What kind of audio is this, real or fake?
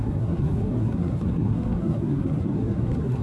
fake